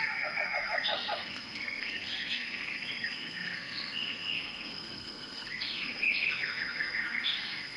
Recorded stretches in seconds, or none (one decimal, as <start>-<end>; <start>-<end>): none